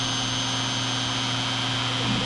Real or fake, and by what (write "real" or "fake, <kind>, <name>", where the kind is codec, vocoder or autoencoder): real